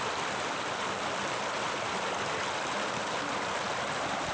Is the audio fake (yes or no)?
no